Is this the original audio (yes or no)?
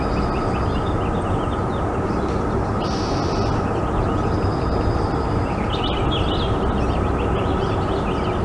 yes